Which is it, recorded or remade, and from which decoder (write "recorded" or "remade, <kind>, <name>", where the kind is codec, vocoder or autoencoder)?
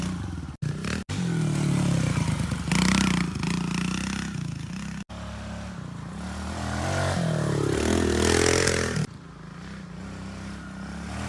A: recorded